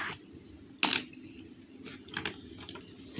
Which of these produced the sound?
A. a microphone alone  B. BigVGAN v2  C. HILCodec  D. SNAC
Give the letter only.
A